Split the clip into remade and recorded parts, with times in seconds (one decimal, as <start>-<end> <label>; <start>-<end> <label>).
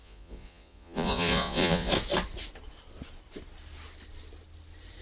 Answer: 0.0-1.9 remade; 1.9-5.0 recorded